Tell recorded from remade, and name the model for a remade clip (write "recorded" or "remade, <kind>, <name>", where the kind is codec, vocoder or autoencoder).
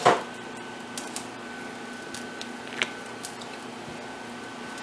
recorded